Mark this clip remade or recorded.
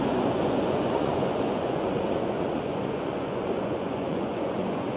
remade